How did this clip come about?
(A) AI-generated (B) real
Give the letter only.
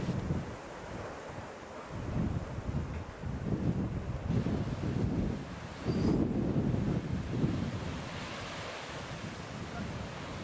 B